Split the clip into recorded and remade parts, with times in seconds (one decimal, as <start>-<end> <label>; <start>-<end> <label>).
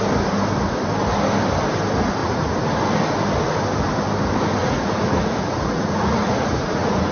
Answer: 0.0-2.2 recorded; 2.2-2.8 remade; 2.8-4.6 recorded; 4.6-7.1 remade